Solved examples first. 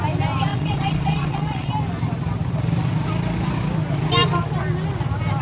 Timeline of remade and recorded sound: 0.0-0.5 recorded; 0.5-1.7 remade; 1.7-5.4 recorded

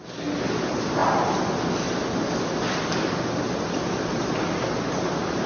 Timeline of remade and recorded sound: 0.0-5.5 recorded

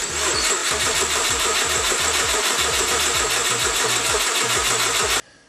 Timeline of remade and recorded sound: 0.0-0.6 recorded; 0.6-2.9 remade; 2.9-5.5 recorded

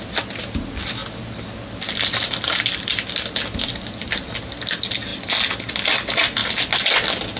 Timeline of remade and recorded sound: 0.0-7.4 recorded

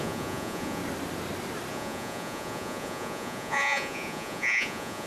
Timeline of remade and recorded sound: 0.0-0.8 remade; 0.8-1.7 recorded; 1.7-5.1 remade

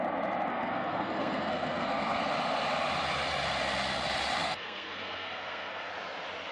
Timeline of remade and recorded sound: 0.0-0.5 recorded; 0.5-2.2 remade; 2.2-4.4 recorded; 4.4-5.9 remade; 5.9-6.5 recorded

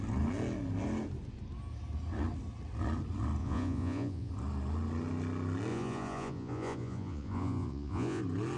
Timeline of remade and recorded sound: 0.0-3.4 recorded; 3.4-4.3 remade; 4.3-5.7 recorded; 5.7-8.2 remade; 8.2-8.6 recorded

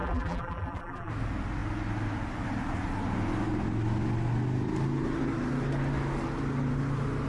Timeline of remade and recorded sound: 0.0-1.1 remade; 1.1-7.3 recorded